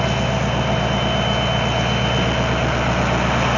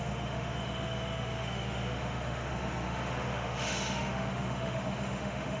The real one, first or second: first